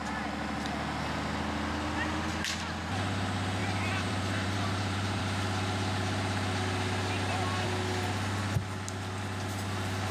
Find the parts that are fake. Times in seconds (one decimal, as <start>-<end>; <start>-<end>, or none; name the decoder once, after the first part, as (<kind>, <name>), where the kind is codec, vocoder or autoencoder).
3.6-5.2 (vocoder, BigVGAN v2)